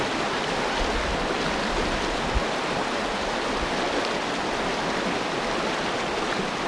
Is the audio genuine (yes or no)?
yes